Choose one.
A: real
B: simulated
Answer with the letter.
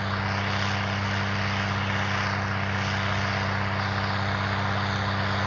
A